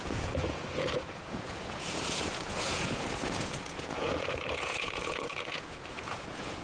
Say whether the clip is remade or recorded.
remade